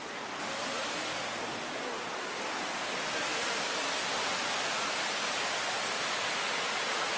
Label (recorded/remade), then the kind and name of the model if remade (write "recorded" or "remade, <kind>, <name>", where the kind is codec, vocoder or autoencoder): recorded